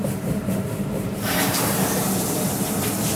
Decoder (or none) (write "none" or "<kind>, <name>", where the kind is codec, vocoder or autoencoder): vocoder, BigVGAN v2